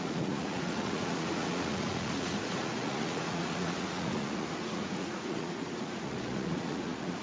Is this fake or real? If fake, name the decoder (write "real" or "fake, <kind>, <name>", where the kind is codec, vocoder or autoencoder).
fake, vocoder, Vocos